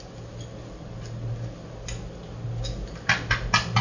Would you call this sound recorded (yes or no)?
yes